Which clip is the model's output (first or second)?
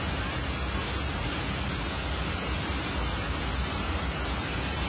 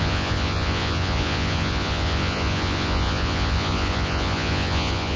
second